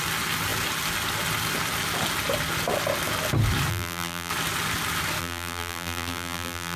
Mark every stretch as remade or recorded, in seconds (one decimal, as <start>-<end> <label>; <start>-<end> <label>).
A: 0.0-3.7 recorded; 3.7-4.3 remade; 4.3-5.2 recorded; 5.2-6.8 remade